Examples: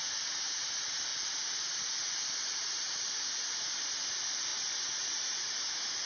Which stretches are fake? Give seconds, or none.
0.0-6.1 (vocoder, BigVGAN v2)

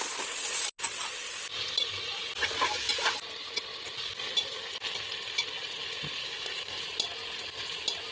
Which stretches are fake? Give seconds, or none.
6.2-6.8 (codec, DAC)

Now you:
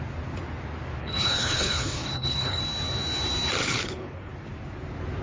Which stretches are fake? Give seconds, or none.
1.0-2.6 (codec, HILCodec); 3.6-4.3